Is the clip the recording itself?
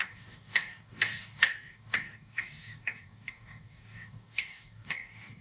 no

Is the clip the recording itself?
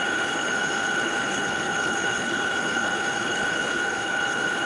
no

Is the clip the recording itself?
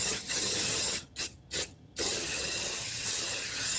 no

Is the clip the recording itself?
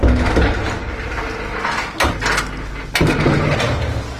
yes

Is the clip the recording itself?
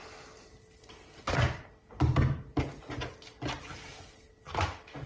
yes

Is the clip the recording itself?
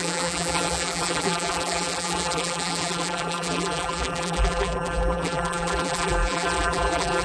no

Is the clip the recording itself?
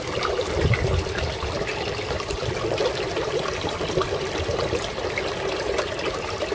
yes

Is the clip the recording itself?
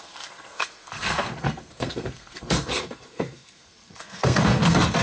no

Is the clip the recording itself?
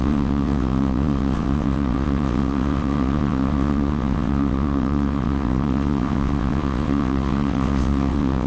no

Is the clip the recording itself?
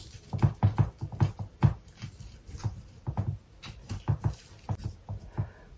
yes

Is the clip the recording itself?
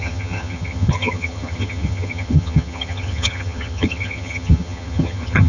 no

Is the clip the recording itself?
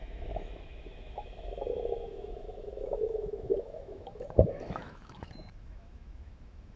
no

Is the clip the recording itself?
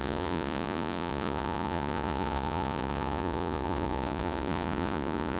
no